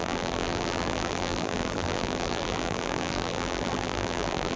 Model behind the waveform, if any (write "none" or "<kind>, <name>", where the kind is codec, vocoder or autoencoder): vocoder, BigVGAN v2